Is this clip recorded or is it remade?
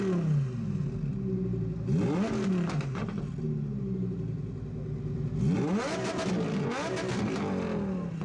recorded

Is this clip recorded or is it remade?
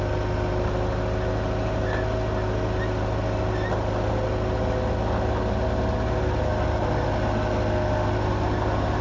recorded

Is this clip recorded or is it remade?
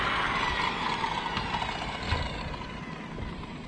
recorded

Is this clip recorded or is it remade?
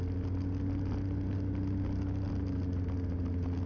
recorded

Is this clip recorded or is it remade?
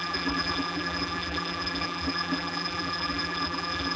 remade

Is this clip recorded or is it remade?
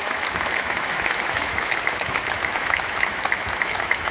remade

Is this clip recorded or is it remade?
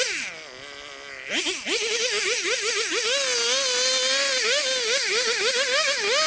recorded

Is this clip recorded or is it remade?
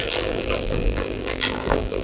remade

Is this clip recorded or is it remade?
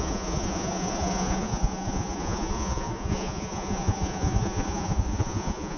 remade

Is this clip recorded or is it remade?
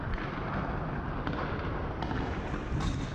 recorded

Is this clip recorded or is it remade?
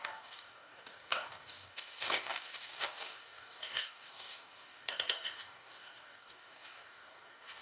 remade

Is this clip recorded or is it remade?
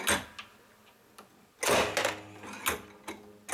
recorded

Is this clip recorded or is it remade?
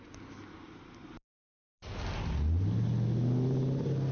recorded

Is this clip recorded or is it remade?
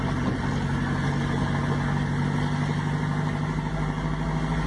recorded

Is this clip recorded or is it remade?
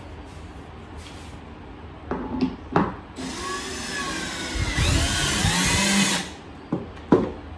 recorded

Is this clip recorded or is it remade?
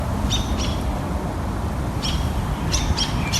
recorded